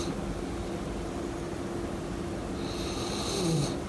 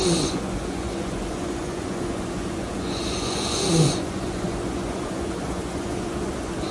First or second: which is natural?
first